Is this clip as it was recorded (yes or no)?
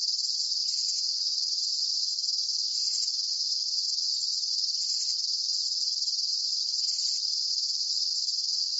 yes